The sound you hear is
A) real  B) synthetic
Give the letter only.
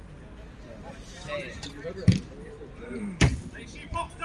A